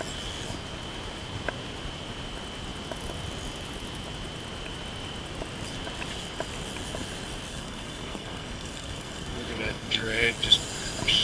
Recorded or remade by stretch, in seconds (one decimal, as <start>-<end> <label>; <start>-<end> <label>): 0.0-7.5 recorded; 7.5-10.3 remade; 10.3-11.2 recorded